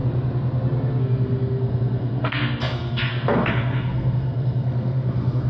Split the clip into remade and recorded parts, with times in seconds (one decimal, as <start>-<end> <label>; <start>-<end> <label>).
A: 0.0-1.0 recorded; 1.0-5.5 remade